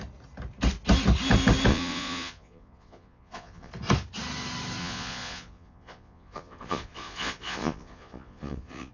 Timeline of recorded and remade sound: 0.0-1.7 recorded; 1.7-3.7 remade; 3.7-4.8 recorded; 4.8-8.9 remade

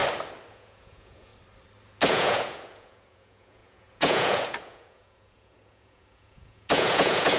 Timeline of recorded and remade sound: 0.0-0.5 recorded; 0.5-1.3 remade; 1.3-2.1 recorded; 2.1-7.4 remade

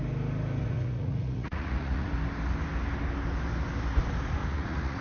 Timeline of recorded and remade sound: 0.0-0.6 recorded; 0.6-2.1 remade; 2.1-4.4 recorded; 4.4-5.0 remade

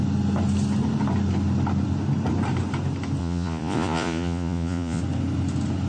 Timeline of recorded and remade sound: 0.0-3.2 recorded; 3.2-5.0 remade; 5.0-5.9 recorded

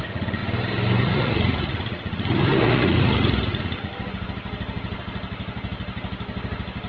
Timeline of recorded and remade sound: 0.0-0.4 remade; 0.4-1.0 recorded; 1.0-3.9 remade; 3.9-6.9 recorded

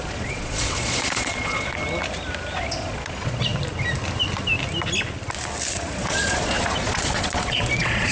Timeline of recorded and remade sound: 0.0-1.8 remade; 1.8-2.6 recorded; 2.6-3.5 remade; 3.5-5.7 recorded; 5.7-8.1 remade

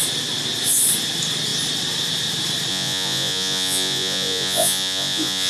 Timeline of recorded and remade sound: 0.0-2.7 recorded; 2.7-5.5 remade

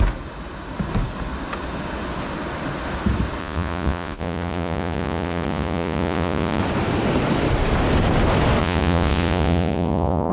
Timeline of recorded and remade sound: 0.0-3.4 recorded; 3.4-6.6 remade; 6.6-8.6 recorded; 8.6-10.3 remade